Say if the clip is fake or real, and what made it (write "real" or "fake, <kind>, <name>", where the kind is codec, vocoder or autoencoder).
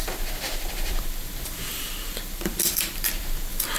fake, vocoder, BigVGAN v2